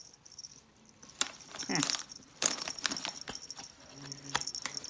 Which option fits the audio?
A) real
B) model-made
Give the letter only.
A